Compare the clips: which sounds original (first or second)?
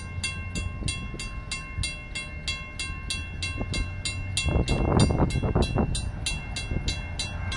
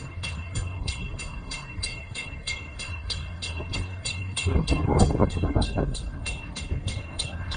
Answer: first